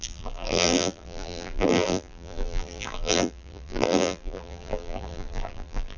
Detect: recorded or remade remade